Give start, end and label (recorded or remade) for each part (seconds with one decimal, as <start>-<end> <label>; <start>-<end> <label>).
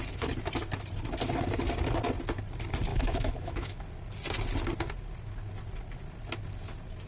0.0-2.9 recorded; 2.9-3.8 remade; 3.8-7.1 recorded